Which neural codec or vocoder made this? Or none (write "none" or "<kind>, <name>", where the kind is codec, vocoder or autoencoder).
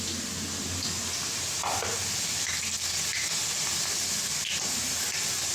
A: none